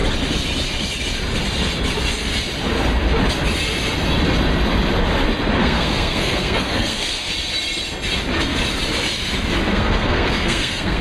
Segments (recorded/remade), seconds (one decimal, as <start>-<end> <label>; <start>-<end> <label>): 0.0-5.6 recorded; 5.6-7.3 remade; 7.3-9.7 recorded; 9.7-11.0 remade